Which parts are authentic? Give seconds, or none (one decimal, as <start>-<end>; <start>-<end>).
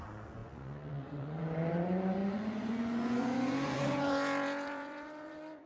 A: none